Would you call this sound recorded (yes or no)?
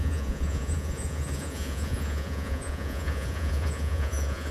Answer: no